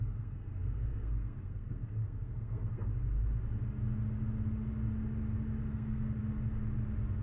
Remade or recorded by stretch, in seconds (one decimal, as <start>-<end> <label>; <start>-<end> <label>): 0.0-2.9 remade; 2.9-5.7 recorded; 5.7-6.2 remade; 6.2-7.2 recorded